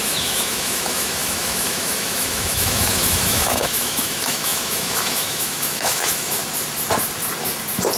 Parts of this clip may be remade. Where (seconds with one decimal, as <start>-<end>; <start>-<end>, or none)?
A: 0.0-6.4